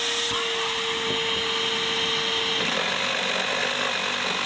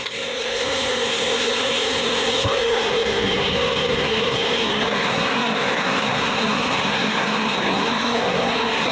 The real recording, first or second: first